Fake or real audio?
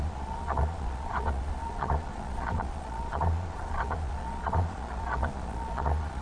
fake